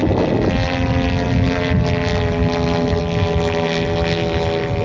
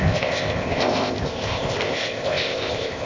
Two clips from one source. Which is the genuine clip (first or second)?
first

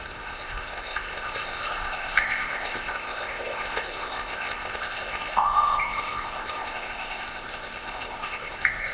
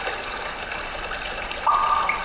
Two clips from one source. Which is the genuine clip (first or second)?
second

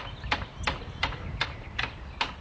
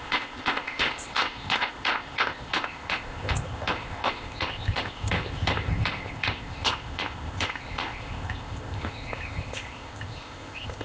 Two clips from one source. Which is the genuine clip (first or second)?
first